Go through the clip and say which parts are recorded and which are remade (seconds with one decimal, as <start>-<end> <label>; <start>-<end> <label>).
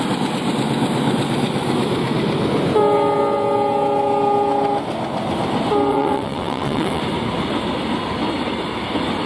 0.0-5.9 recorded; 5.9-7.0 remade; 7.0-9.3 recorded